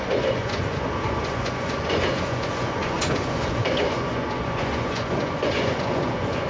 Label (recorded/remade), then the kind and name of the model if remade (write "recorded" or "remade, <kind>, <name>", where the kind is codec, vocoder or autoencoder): remade, vocoder, Vocos